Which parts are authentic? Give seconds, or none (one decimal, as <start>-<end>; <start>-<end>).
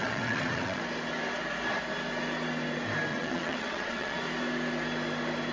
0.8-3.1; 4.2-5.5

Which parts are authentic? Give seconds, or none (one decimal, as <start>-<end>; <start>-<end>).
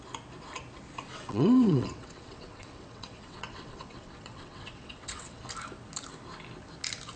0.0-1.1; 5.4-7.2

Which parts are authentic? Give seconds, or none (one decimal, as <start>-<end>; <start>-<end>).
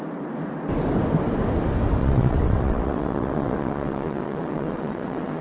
0.0-2.0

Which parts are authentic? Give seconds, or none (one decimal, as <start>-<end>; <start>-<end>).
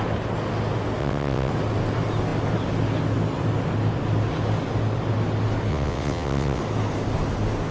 0.0-1.0; 1.5-5.7; 6.6-7.7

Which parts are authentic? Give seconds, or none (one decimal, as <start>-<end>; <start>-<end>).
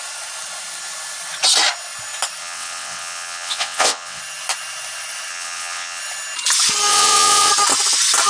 0.0-2.4; 4.2-5.3; 6.0-6.9; 7.5-8.3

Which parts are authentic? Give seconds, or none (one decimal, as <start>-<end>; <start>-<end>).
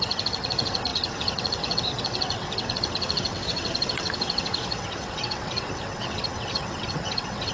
none